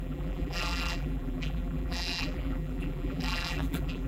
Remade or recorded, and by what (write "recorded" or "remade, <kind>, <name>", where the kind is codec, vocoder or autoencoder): remade, vocoder, BigVGAN v2